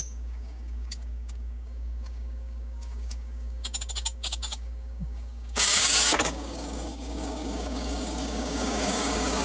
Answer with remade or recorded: remade